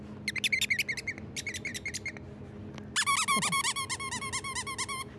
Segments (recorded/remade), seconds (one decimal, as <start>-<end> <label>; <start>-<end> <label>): 0.0-5.2 recorded